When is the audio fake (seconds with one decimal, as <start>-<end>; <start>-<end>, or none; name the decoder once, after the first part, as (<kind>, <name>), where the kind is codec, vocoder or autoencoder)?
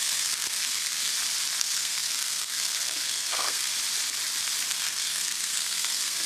0.0-1.1 (codec, SNAC); 1.6-3.7; 4.7-6.3